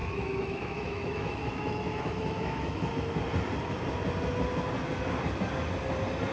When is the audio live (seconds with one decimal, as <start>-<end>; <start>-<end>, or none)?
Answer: 2.9-6.3